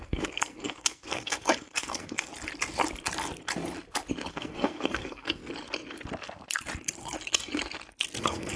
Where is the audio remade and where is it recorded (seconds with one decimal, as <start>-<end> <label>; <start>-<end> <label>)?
0.0-2.3 remade; 2.3-4.3 recorded; 4.3-5.4 remade; 5.4-8.2 recorded; 8.2-8.6 remade